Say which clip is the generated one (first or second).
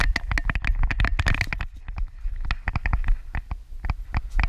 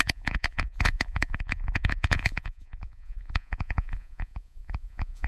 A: second